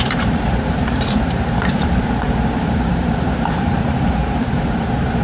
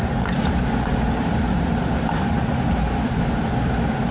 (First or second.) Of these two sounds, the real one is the second